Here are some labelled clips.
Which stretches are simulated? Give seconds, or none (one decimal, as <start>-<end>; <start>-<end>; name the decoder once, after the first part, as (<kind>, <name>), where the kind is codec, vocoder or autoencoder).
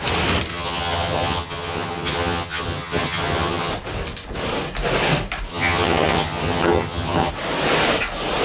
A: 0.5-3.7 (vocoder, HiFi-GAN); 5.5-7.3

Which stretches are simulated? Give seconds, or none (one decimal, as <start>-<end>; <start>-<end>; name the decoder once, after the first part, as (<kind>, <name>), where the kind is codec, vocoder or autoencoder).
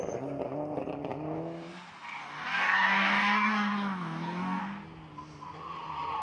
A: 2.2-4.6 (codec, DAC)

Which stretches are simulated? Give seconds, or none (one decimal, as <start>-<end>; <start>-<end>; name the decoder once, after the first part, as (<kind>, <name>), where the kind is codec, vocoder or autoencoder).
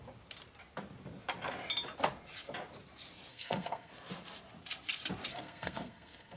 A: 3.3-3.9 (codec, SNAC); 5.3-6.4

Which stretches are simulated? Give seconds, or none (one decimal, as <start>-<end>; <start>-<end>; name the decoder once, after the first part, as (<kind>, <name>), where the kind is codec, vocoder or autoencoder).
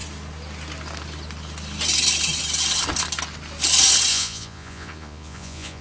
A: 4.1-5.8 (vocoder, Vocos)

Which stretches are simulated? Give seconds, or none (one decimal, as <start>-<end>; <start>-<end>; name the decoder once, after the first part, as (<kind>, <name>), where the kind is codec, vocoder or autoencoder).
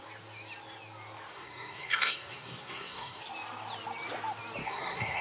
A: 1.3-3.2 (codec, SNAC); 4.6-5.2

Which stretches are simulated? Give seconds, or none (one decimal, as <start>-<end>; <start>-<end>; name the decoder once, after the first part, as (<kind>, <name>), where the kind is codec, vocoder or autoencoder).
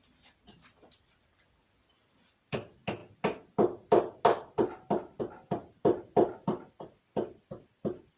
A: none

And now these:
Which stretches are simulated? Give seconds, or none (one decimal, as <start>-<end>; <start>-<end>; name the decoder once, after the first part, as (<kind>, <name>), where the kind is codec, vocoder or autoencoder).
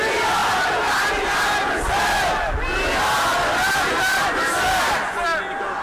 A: none